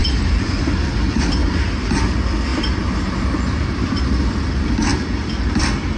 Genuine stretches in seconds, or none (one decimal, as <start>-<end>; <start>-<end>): 0.6-1.4; 2.0-2.5; 4.0-6.0